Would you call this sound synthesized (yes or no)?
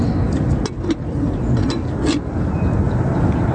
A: no